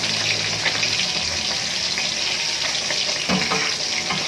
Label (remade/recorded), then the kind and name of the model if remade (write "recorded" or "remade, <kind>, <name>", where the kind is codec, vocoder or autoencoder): recorded